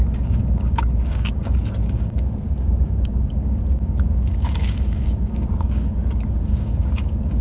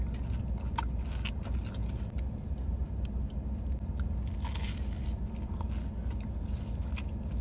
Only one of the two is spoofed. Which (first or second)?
first